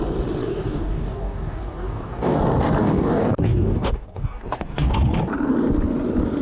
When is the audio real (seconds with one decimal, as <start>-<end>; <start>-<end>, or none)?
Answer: 0.0-0.4; 2.4-2.8; 5.0-6.4